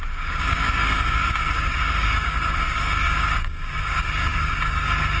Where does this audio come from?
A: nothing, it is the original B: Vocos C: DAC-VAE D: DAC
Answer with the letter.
D